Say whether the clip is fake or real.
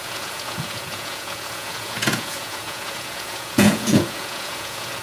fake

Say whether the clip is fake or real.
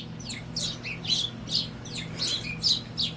real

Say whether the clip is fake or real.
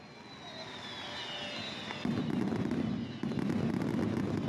real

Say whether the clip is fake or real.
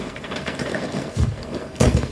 fake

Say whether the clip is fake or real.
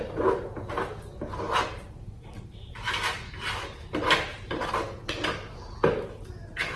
real